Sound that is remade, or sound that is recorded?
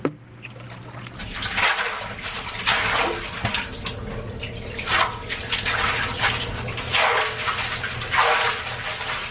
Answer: recorded